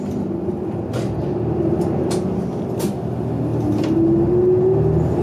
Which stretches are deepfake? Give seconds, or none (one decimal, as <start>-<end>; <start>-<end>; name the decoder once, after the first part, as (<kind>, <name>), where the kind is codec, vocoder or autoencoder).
none

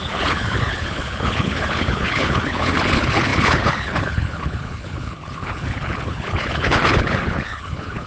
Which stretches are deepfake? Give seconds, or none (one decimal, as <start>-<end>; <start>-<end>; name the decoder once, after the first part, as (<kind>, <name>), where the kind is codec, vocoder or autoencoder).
0.0-8.1 (codec, HILCodec)

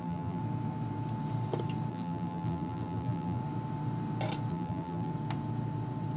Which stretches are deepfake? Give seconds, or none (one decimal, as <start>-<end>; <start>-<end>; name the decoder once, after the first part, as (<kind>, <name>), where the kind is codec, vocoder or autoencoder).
0.0-0.4 (vocoder, BigVGAN v2); 1.9-3.4; 4.5-5.1

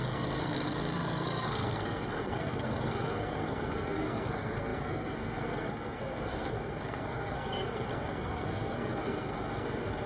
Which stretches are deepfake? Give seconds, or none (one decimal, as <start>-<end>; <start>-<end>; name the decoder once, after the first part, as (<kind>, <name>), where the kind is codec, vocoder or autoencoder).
0.0-10.1 (codec, SNAC)

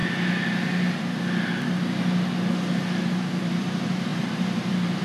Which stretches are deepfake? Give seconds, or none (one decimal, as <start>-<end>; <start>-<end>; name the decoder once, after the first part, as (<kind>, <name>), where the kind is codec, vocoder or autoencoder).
3.0-5.0 (vocoder, BigVGAN v2)